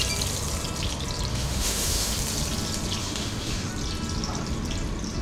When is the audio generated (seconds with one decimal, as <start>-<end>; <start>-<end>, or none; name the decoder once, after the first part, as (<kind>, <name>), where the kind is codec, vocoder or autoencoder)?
1.3-2.1 (autoencoder, DAC-VAE); 3.0-3.7